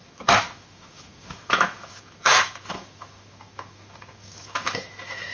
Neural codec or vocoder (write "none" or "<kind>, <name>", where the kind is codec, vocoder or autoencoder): autoencoder, DAC-VAE